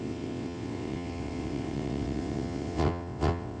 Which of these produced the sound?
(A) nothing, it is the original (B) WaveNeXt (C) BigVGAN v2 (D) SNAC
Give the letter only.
B